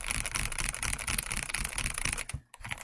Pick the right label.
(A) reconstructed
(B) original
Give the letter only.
B